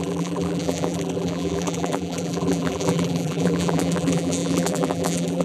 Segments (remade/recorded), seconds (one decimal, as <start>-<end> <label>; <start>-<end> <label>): 0.0-5.4 remade

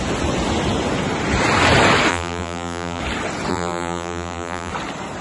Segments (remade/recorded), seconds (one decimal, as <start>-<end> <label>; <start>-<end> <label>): 0.0-2.1 recorded; 2.1-3.0 remade; 3.0-3.5 recorded; 3.5-4.7 remade; 4.7-5.2 recorded

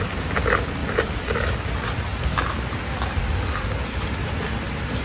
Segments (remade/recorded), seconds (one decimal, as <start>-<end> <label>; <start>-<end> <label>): 0.0-0.8 recorded; 0.8-1.7 remade; 1.7-5.0 recorded

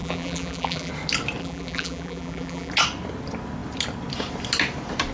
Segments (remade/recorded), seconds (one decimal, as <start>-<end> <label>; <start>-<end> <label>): 0.0-0.9 remade; 0.9-1.4 recorded; 1.4-2.7 remade; 2.7-5.1 recorded

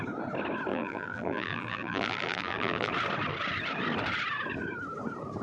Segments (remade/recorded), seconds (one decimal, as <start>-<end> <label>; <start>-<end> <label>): 0.0-0.7 recorded; 0.7-2.9 remade; 2.9-5.4 recorded